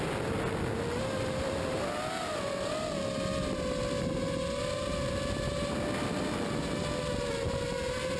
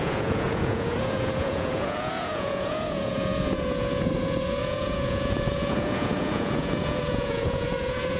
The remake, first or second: second